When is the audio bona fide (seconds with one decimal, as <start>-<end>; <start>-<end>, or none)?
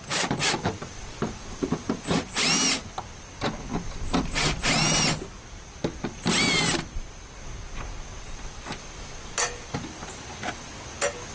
0.0-11.3